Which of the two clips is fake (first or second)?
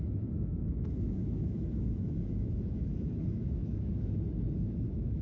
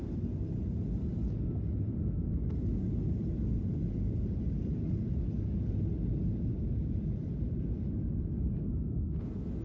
first